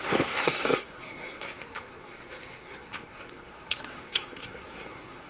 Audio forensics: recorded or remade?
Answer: remade